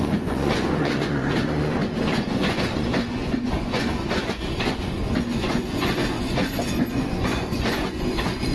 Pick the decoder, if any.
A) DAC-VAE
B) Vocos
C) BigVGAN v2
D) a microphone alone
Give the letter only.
B